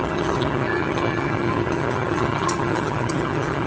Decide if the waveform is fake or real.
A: fake